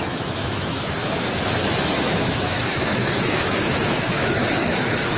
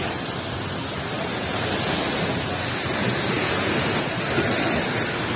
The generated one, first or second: first